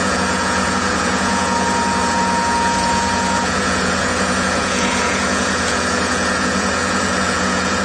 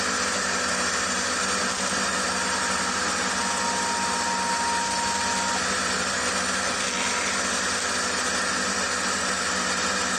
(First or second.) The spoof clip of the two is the first